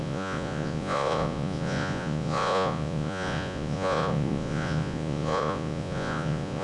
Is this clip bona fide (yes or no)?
no